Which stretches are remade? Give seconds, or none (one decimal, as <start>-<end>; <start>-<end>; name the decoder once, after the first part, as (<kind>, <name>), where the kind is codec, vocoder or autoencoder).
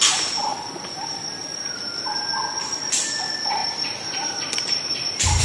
0.5-1.7 (vocoder, BigVGAN v2); 3.6-5.4